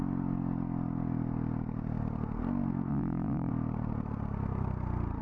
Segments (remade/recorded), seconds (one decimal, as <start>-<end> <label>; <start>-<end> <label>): 0.0-2.9 recorded; 2.9-3.5 remade; 3.5-5.2 recorded